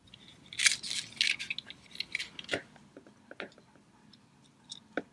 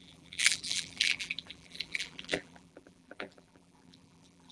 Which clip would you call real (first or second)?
first